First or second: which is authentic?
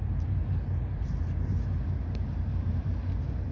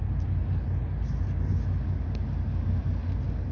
second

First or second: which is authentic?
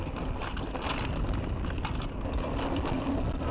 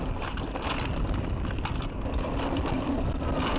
first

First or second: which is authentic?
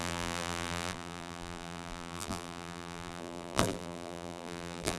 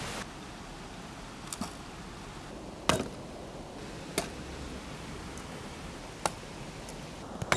second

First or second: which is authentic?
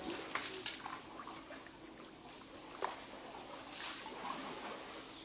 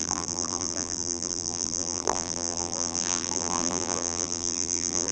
first